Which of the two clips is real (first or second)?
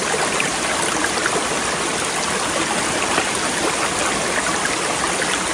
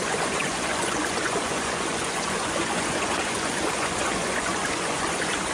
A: first